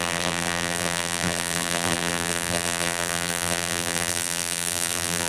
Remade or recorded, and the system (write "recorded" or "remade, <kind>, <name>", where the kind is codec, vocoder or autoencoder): remade, vocoder, BigVGAN v2